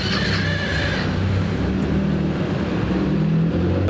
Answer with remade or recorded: recorded